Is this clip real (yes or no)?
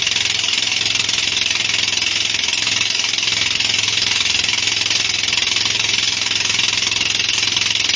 yes